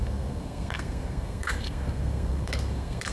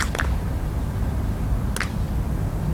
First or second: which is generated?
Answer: first